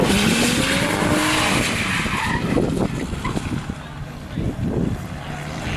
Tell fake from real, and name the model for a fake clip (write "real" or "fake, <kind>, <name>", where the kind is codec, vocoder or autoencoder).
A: real